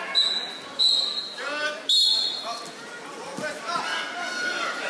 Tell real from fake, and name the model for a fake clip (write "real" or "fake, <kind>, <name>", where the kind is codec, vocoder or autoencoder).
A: real